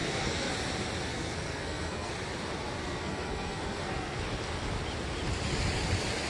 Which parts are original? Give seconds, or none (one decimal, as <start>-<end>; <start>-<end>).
0.5-1.1; 2.1-2.8; 4.2-6.3